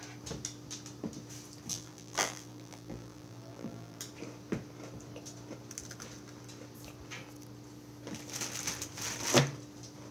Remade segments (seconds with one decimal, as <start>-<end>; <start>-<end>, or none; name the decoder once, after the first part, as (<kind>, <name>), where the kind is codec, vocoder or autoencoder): 1.7-4.0 (vocoder, BigVGAN v2)